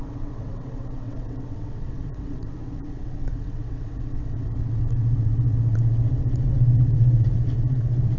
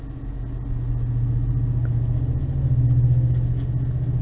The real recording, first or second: second